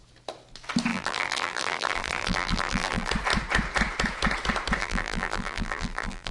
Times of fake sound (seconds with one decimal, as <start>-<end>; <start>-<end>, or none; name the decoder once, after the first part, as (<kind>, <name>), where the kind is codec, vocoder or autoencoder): 0.9-3.1 (vocoder, BigVGAN v2); 4.8-6.3